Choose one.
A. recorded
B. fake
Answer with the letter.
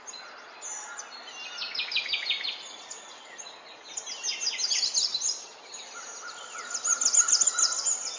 A